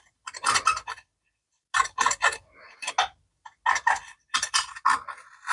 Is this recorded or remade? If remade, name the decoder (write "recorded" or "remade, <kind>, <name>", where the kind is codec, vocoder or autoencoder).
recorded